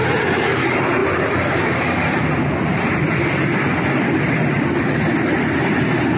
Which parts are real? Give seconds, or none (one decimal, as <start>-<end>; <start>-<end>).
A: 0.0-2.7; 5.8-6.2